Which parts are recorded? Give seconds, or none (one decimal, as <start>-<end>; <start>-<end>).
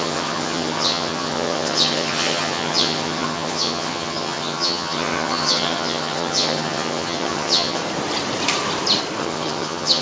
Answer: 7.8-9.2